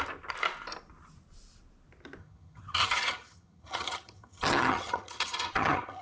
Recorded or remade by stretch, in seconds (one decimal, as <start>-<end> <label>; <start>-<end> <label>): 0.0-2.2 recorded; 2.2-6.0 remade